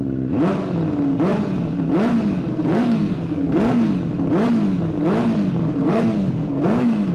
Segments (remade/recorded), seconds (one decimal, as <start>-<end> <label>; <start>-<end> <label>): 0.0-2.5 recorded; 2.5-3.9 remade; 3.9-5.6 recorded; 5.6-7.1 remade